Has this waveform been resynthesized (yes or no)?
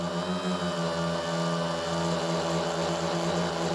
no